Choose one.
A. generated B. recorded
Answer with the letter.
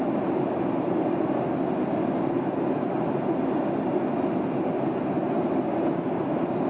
B